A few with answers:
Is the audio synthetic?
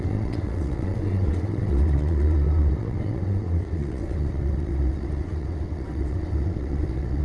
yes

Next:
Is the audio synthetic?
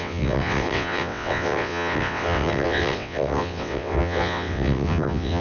yes